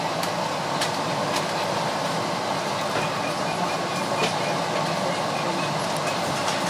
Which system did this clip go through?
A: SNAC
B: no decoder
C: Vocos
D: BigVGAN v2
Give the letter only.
B